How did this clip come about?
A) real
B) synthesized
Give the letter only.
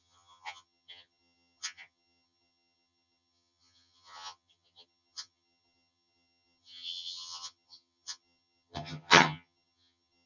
B